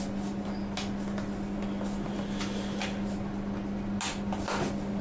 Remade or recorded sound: recorded